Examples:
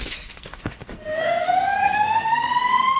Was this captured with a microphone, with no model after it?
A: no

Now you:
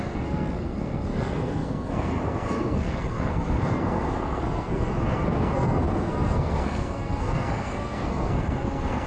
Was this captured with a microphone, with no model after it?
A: no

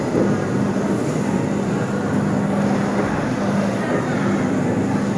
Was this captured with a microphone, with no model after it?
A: yes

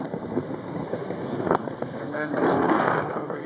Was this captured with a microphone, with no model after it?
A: no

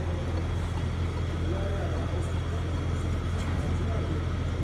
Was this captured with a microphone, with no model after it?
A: yes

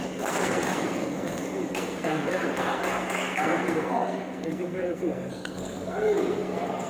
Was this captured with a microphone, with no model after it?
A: no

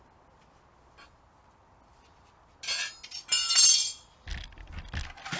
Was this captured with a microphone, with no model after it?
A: yes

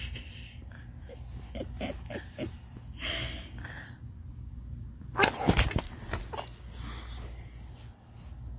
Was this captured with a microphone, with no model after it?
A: yes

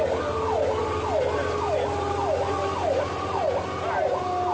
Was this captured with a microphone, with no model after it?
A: yes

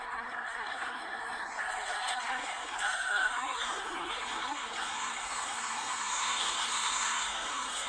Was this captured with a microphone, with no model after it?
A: no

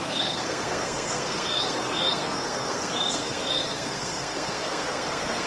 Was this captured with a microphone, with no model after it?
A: no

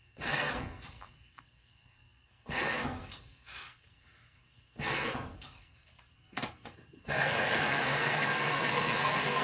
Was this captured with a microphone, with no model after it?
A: no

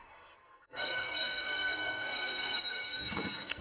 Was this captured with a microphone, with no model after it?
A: no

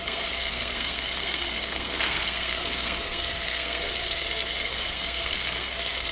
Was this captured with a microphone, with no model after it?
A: no